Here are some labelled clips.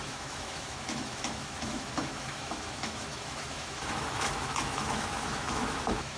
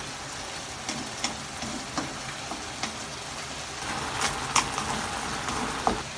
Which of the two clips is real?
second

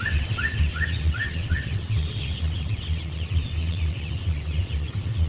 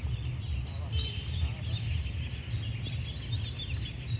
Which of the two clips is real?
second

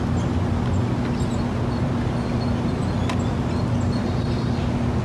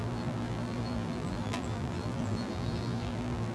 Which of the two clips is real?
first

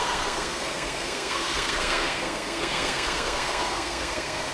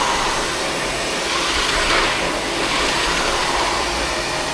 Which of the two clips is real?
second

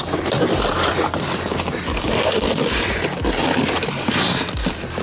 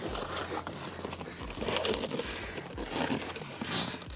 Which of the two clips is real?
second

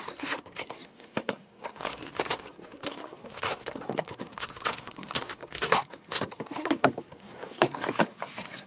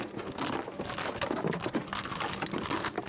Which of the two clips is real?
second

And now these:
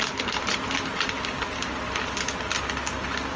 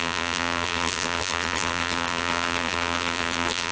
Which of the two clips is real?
first